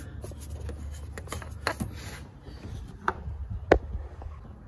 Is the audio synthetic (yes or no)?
no